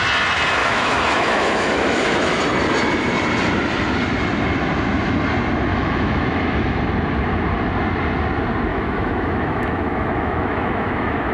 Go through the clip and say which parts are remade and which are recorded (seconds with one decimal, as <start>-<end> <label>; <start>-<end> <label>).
0.0-0.6 recorded; 0.6-2.4 remade; 2.4-5.7 recorded; 5.7-6.8 remade; 6.8-8.7 recorded; 8.7-11.3 remade